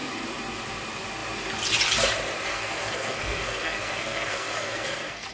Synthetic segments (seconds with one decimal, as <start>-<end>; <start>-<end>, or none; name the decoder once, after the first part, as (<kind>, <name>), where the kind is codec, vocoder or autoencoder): 2.5-5.3 (codec, SNAC)